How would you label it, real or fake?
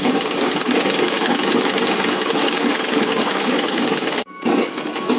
fake